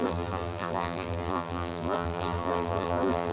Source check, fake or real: fake